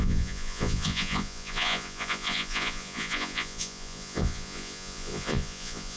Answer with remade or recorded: remade